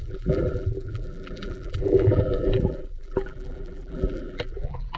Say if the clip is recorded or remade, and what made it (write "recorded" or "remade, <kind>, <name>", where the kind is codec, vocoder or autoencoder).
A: remade, vocoder, BigVGAN v2